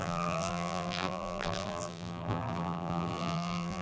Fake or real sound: fake